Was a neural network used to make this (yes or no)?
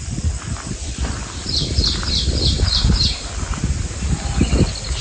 no